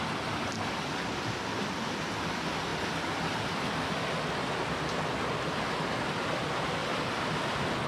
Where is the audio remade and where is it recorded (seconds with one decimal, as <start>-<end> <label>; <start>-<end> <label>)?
0.0-6.8 recorded; 6.8-7.4 remade; 7.4-7.9 recorded